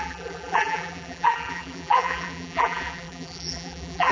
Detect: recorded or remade remade